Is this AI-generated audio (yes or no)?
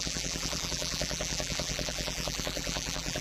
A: yes